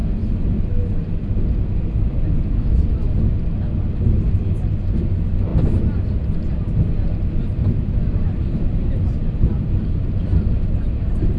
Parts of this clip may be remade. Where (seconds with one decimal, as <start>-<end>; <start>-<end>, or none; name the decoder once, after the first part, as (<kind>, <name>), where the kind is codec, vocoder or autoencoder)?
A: none